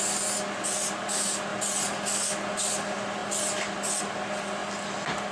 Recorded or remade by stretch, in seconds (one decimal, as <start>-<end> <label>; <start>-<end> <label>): 0.0-5.3 recorded